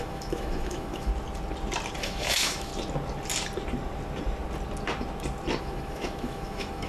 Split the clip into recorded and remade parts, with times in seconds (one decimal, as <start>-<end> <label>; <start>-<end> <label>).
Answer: 0.0-1.1 remade; 1.1-2.0 recorded; 2.0-2.7 remade; 2.7-5.6 recorded; 5.6-6.9 remade